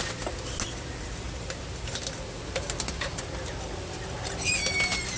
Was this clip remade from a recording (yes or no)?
no